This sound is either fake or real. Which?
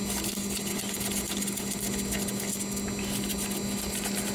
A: real